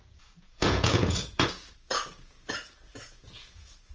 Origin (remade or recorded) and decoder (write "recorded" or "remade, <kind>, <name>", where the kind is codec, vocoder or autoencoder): remade, vocoder, Vocos